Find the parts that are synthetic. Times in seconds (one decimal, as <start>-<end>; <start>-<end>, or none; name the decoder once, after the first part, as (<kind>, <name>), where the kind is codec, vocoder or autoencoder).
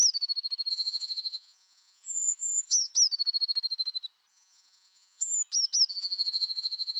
0.7-2.9 (vocoder, Vocos); 4.3-5.3; 5.9-7.0